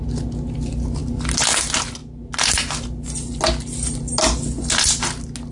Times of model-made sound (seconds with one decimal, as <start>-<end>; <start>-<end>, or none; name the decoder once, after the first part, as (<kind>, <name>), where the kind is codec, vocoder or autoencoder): none